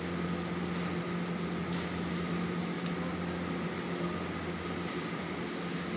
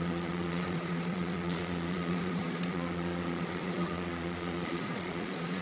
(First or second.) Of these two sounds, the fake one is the second